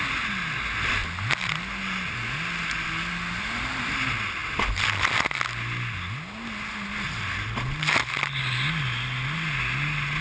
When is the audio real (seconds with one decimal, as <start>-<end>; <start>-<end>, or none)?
0.0-10.2